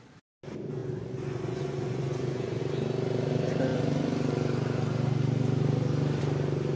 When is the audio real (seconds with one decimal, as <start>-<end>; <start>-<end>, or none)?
0.0-0.8; 2.6-6.8